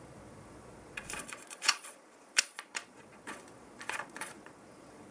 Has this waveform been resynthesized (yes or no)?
yes